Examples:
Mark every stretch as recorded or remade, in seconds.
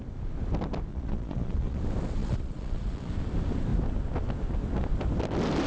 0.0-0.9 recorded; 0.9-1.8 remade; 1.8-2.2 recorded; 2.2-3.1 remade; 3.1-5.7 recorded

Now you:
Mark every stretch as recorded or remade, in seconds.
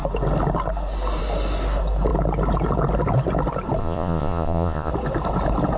0.0-3.8 recorded; 3.8-4.9 remade; 4.9-5.8 recorded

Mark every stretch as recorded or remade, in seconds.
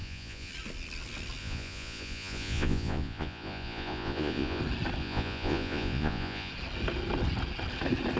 0.0-0.5 remade; 0.5-1.4 recorded; 1.4-4.6 remade; 4.6-5.0 recorded; 5.0-6.5 remade; 6.5-8.2 recorded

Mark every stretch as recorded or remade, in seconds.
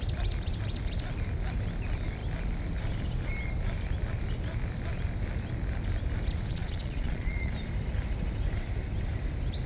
0.0-6.5 recorded; 6.5-7.5 remade; 7.5-9.7 recorded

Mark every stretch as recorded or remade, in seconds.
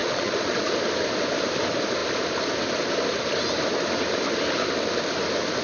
0.0-0.7 remade; 0.7-5.6 recorded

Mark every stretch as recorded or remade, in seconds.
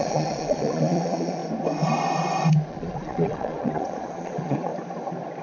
0.0-1.4 remade; 1.4-2.7 recorded; 2.7-4.7 remade; 4.7-5.4 recorded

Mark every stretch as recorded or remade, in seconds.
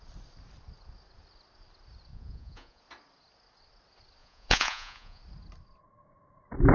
0.0-2.1 recorded; 2.1-2.8 remade; 2.8-4.2 recorded; 4.2-5.2 remade; 5.2-6.7 recorded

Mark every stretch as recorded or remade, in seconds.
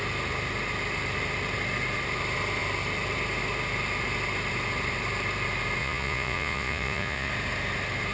0.0-5.8 recorded; 5.8-7.3 remade; 7.3-8.1 recorded